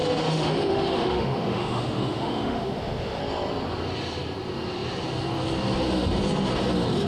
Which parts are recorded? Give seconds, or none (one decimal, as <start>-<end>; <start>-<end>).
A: 3.2-7.1